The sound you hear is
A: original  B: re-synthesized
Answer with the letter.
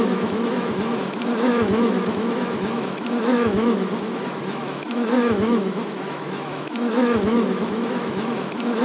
B